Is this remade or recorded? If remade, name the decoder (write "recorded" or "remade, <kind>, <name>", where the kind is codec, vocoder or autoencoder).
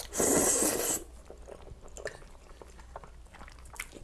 recorded